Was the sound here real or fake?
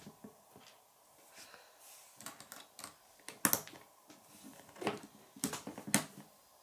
real